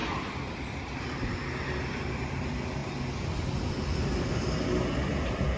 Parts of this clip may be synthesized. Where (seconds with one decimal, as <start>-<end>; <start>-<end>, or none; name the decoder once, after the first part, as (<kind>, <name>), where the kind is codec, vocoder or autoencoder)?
none